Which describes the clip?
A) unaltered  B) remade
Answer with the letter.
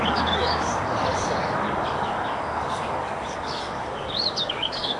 B